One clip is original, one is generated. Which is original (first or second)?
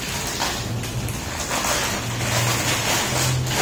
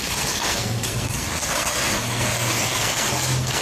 first